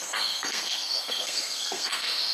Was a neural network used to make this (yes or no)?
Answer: yes